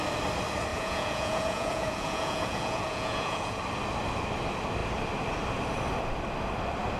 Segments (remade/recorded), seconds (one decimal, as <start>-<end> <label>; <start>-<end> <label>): 0.0-0.7 recorded; 0.7-3.6 remade; 3.6-7.0 recorded